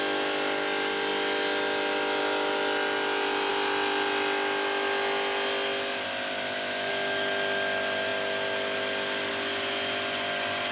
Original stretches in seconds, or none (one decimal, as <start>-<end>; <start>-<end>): 0.0-10.7